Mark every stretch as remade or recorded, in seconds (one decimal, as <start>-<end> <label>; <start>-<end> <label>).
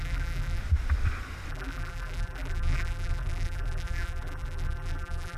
0.0-0.6 remade; 0.6-1.5 recorded; 1.5-5.4 remade